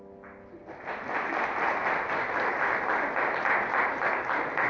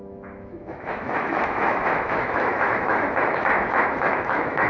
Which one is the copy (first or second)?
second